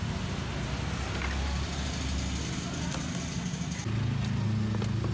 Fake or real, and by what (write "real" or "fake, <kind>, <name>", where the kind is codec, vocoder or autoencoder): real